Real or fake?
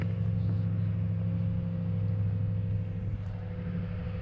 real